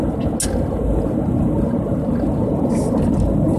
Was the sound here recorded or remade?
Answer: recorded